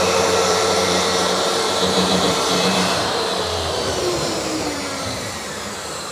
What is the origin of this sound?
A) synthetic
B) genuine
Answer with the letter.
A